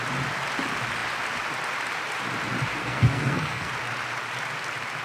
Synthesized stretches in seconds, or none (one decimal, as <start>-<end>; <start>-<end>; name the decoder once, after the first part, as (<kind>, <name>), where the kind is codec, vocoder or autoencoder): 2.8-3.7 (codec, SNAC)

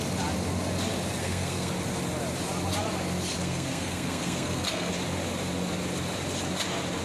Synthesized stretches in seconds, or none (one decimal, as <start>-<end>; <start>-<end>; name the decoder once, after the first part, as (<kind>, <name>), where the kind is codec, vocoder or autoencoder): 1.2-1.7 (codec, SNAC); 3.4-4.9

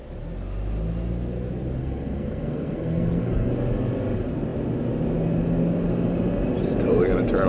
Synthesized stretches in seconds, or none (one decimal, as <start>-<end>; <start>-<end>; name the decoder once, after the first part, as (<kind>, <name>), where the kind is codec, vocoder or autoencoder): 1.8-3.5 (codec, SNAC)

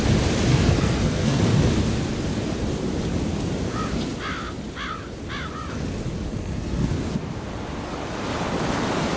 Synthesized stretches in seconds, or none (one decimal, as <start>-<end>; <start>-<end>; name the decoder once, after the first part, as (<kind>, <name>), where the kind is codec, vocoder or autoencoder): 0.5-1.4 (codec, SNAC); 6.3-7.1

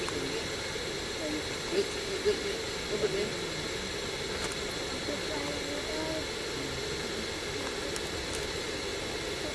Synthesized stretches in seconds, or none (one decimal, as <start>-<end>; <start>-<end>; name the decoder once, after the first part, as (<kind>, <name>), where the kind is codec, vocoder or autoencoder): none

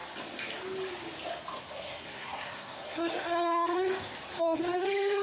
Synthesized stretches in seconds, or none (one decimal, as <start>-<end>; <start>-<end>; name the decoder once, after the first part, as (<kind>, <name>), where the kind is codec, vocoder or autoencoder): 1.6-3.9 (codec, SNAC); 4.4-5.2

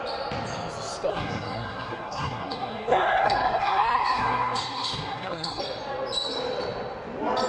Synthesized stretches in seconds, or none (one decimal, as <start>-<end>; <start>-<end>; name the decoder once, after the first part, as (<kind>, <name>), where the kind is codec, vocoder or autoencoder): 1.1-5.6 (codec, SNAC)

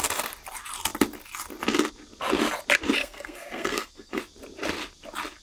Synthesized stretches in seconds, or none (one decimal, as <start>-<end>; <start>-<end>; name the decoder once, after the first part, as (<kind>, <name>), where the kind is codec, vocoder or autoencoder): 3.0-4.2 (codec, SNAC)